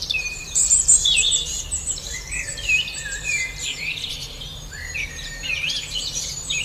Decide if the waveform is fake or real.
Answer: fake